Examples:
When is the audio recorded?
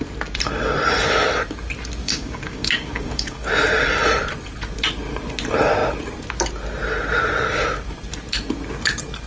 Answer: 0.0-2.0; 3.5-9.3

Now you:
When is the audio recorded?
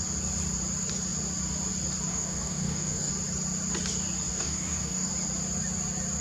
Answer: 0.0-2.1; 3.1-4.3; 5.1-6.2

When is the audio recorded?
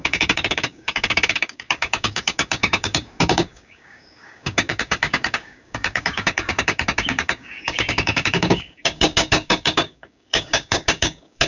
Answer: none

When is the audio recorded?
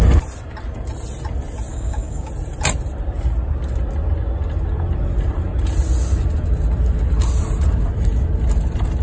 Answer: 0.0-1.7; 2.3-9.0